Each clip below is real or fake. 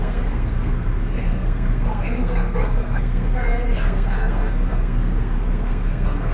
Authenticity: fake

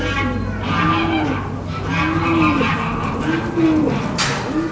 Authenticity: real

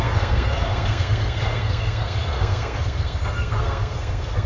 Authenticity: fake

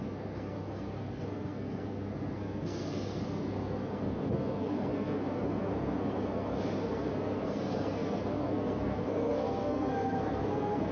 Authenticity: fake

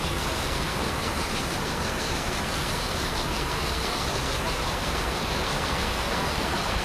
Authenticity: fake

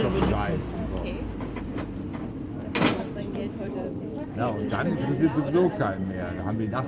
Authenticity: real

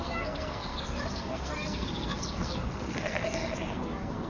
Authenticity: fake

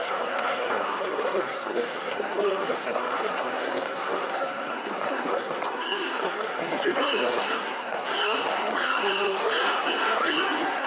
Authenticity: fake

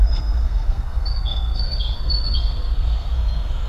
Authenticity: fake